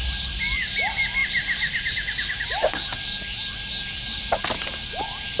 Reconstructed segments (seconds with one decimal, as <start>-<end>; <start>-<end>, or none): none